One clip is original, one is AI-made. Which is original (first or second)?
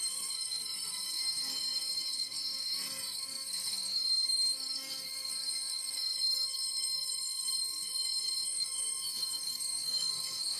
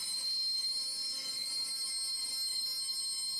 second